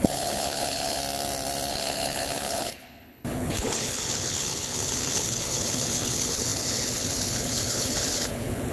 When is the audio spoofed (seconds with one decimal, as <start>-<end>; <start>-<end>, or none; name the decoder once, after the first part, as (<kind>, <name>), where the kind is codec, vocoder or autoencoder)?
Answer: 0.0-1.0 (codec, HILCodec); 1.7-8.7